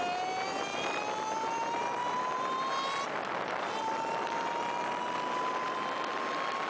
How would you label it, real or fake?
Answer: real